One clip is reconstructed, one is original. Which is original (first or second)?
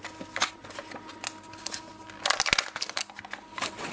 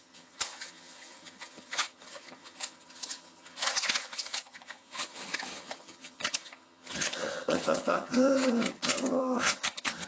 first